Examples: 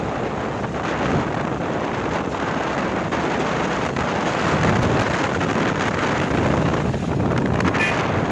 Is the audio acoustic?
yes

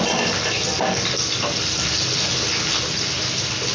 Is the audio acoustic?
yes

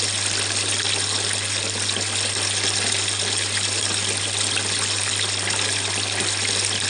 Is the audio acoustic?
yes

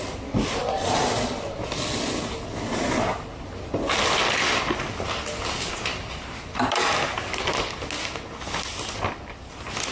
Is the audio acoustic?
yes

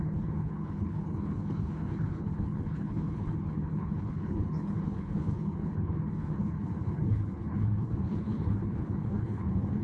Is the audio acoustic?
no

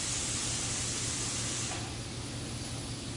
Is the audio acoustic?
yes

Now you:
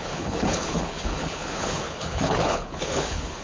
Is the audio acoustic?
no